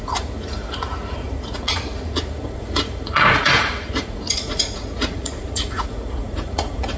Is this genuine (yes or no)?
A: no